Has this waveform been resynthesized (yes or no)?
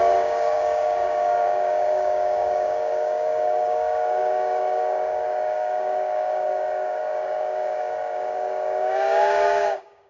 yes